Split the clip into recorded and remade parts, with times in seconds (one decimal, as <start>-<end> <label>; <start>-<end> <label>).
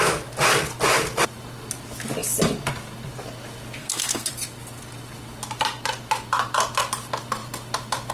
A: 0.0-3.8 recorded; 3.8-4.3 remade; 4.3-8.1 recorded